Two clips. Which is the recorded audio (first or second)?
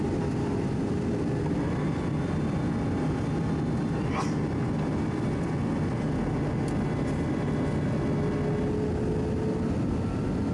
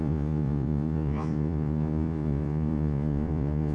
first